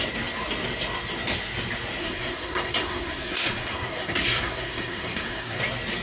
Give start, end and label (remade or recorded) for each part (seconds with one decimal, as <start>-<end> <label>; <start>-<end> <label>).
0.0-2.0 recorded; 2.0-5.6 remade; 5.6-6.0 recorded